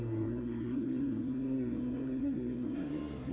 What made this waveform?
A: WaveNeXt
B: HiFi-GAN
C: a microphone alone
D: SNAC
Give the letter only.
D